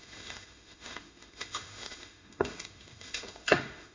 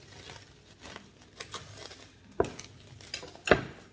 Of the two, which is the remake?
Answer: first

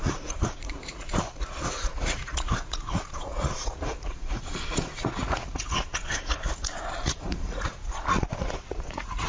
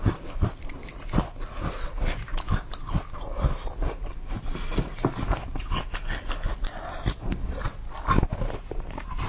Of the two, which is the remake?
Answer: first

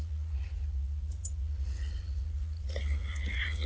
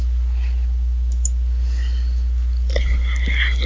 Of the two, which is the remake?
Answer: first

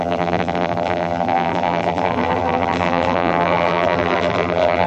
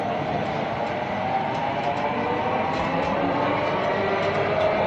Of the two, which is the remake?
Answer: first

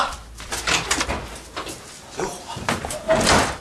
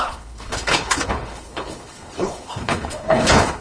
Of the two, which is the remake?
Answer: second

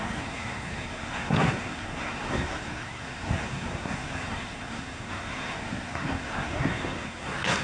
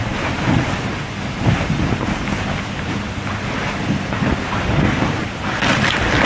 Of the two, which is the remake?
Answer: first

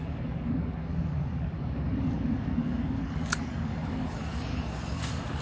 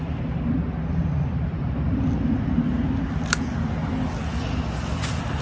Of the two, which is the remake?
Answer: first